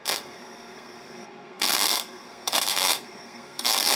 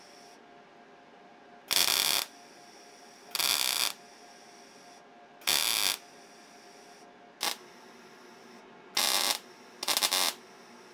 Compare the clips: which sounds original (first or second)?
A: second